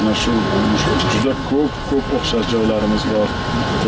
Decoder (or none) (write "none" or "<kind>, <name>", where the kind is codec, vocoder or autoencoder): none